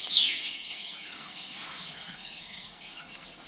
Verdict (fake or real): fake